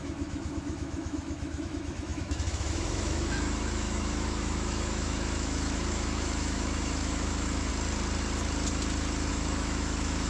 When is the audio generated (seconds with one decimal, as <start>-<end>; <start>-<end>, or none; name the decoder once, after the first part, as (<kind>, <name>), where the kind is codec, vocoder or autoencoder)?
0.0-7.7 (autoencoder, DAC-VAE); 9.3-10.3